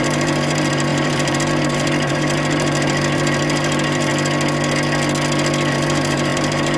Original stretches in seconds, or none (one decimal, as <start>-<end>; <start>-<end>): 4.1-5.7